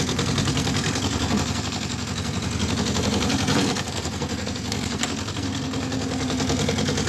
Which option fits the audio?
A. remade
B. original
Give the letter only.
A